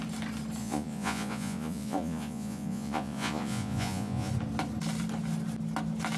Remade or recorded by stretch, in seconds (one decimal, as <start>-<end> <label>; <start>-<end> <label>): 0.0-0.6 recorded; 0.6-4.3 remade; 4.3-6.2 recorded